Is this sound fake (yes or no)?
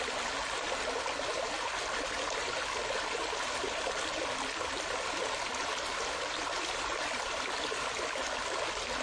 no